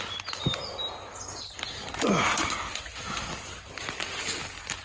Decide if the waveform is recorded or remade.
recorded